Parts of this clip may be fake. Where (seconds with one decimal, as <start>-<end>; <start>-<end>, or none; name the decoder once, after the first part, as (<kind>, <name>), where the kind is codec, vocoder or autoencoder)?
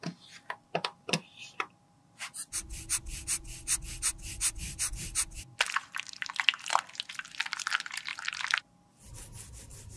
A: none